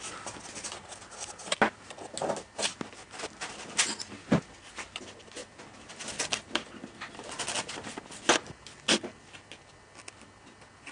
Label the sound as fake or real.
real